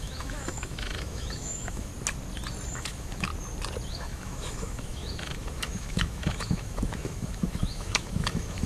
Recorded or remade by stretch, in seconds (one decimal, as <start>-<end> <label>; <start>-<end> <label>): 0.0-1.9 remade; 1.9-2.7 recorded; 2.7-3.3 remade; 3.3-3.9 recorded; 3.9-8.7 remade